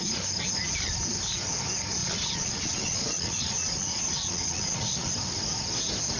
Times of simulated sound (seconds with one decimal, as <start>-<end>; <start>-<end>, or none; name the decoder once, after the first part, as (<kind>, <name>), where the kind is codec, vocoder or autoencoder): 2.0-5.1 (vocoder, Vocos)

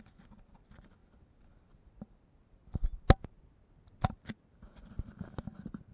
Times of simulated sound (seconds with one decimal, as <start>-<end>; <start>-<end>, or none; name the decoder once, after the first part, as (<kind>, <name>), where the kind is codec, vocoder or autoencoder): none

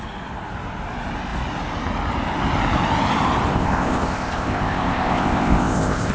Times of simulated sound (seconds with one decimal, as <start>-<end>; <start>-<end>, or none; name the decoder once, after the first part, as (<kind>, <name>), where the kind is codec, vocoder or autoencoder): 3.5-6.1 (codec, ZipCodec)

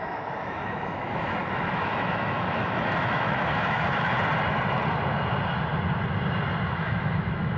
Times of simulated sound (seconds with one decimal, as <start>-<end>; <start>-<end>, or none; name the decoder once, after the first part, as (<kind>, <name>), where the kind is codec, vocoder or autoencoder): 0.0-4.1 (autoencoder, DAC-VAE); 6.7-7.6

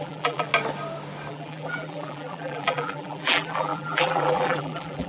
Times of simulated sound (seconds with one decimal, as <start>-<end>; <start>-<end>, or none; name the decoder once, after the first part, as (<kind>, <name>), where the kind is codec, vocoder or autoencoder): 0.0-0.5 (vocoder, BigVGAN v2); 1.3-5.1